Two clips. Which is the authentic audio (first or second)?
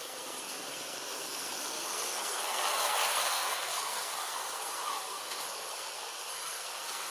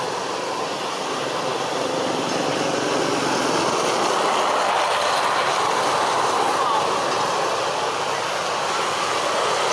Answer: second